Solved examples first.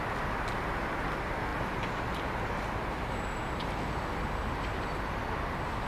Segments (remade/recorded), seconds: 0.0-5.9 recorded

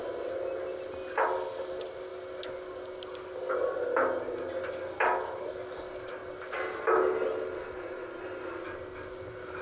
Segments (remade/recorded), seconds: 0.0-9.6 recorded

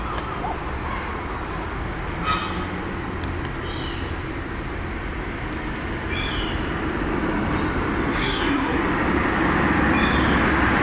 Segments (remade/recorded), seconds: 0.0-8.1 recorded; 8.1-8.8 remade; 8.8-10.8 recorded

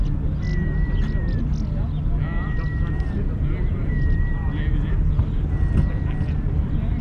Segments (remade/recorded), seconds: 0.0-7.0 recorded